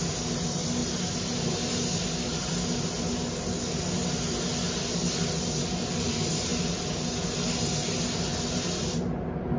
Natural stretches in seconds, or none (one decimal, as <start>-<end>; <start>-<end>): 0.0-8.3